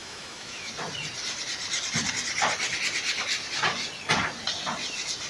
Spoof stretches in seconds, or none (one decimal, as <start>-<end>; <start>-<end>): 0.0-0.7